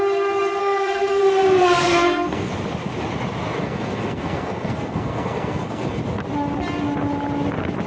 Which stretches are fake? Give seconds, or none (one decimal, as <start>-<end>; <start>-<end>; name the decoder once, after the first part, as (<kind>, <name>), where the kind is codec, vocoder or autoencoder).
0.6-1.2 (codec, SNAC); 1.6-2.5; 3.6-6.0